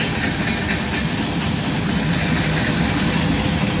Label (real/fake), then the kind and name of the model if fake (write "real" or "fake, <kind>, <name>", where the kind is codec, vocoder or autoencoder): real